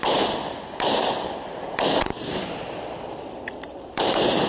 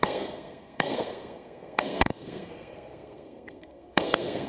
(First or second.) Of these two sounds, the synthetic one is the second